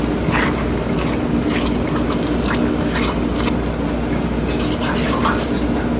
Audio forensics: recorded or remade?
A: recorded